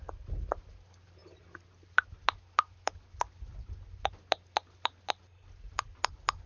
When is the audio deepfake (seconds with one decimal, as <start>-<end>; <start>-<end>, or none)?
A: none